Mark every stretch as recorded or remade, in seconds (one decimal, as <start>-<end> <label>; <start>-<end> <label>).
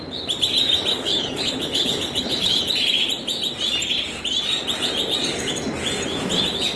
0.0-0.9 recorded; 0.9-2.6 remade; 2.6-6.8 recorded